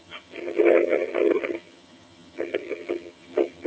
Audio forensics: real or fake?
fake